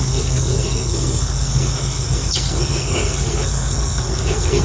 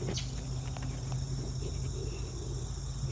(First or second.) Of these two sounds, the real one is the second